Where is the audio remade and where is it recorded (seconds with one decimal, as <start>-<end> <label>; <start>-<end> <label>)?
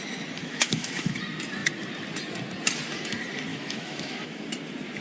0.0-0.4 recorded; 0.4-1.2 remade; 1.2-3.5 recorded; 3.5-4.4 remade; 4.4-5.0 recorded